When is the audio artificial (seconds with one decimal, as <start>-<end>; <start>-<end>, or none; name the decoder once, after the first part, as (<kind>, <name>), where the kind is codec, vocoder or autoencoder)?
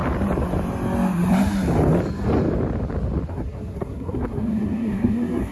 3.3-5.5 (codec, SNAC)